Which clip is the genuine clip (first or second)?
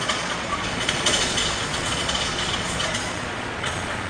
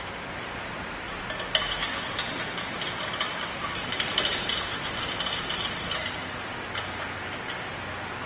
second